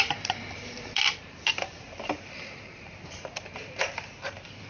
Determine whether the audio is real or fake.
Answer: fake